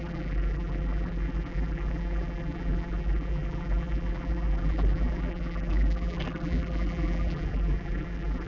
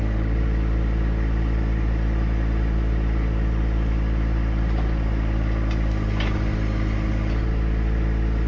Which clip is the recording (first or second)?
second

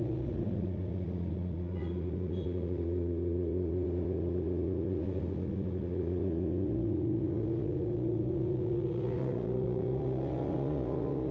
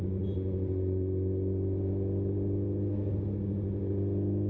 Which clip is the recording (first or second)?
second